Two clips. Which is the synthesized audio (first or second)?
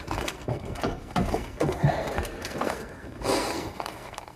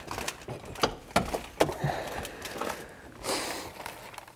first